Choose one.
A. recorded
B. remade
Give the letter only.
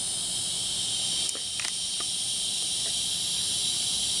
A